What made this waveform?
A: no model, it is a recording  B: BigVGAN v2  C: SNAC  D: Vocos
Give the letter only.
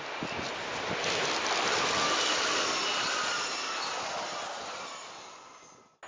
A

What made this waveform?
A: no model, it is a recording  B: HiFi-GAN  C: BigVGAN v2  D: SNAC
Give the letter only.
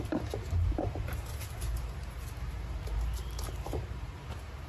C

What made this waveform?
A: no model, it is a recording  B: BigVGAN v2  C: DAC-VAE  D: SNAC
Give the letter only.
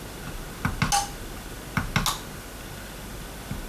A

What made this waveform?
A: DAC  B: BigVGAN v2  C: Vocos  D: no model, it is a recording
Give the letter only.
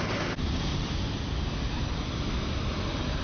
D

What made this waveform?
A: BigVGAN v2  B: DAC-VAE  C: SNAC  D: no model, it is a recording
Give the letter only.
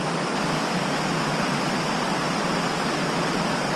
D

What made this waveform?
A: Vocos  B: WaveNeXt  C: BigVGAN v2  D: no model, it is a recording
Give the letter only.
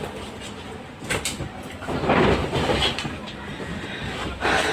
D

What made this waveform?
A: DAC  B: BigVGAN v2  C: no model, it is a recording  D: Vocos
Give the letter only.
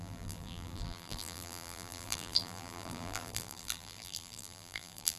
B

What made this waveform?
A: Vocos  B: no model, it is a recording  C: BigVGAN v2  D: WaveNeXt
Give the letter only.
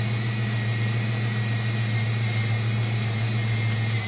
B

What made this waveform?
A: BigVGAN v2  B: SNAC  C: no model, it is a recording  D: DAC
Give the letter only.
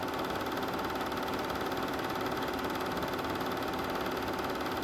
C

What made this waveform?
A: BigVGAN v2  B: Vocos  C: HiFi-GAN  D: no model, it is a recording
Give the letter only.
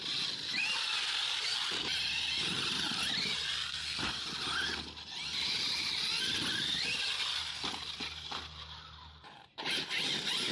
D